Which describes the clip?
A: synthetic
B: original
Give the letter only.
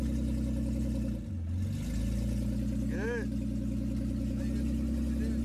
B